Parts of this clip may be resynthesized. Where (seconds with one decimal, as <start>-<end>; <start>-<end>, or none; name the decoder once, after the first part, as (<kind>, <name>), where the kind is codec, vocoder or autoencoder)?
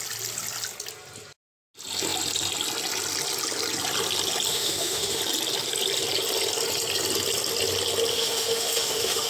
4.5-5.2 (autoencoder, DAC-VAE); 8.1-9.3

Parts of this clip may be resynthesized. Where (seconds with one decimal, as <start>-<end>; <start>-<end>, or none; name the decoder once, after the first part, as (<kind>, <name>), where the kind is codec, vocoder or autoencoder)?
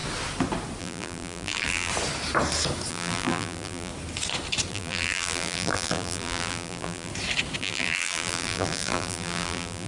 0.8-1.9 (vocoder, BigVGAN v2); 2.9-3.9; 4.7-7.1; 7.6-9.9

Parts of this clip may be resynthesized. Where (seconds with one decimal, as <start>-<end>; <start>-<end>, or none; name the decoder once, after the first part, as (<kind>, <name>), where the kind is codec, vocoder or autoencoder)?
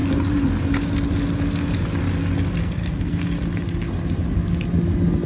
2.6-3.2 (codec, SNAC)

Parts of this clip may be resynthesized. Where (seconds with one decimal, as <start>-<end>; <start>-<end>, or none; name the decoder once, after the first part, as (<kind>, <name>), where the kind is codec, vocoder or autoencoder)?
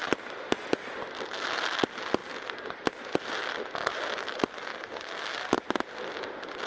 4.7-5.4 (codec, DAC)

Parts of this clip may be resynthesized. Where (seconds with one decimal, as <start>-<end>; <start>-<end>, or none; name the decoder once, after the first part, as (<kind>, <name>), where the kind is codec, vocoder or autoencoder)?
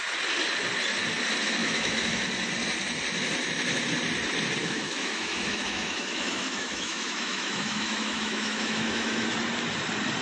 1.6-2.2 (autoencoder, DAC-VAE); 4.6-9.3